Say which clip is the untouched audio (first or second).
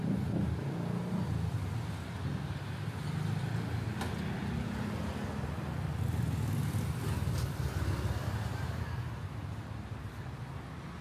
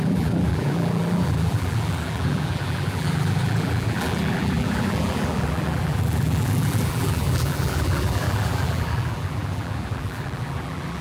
first